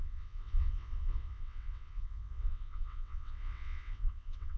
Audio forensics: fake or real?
fake